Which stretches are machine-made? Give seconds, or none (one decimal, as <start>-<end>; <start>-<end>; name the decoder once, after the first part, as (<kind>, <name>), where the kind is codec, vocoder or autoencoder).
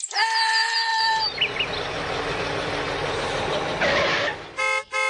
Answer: 0.9-4.0 (vocoder, BigVGAN v2)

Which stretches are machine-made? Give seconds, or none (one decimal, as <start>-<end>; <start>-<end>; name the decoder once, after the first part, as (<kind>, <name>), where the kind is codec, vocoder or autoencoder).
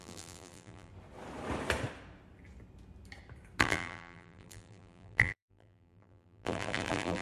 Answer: 0.0-0.9 (vocoder, BigVGAN v2); 3.6-7.2